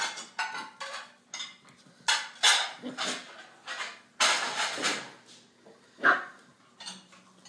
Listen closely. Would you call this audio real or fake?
real